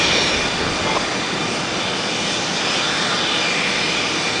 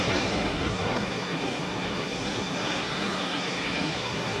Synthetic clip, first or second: second